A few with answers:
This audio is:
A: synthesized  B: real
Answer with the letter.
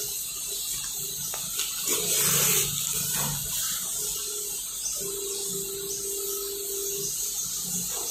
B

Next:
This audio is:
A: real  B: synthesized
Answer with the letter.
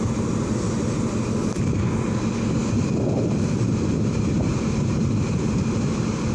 A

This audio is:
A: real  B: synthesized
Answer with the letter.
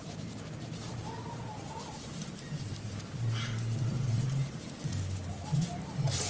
B